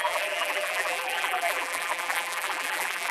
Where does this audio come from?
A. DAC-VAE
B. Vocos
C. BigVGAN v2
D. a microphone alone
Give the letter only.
C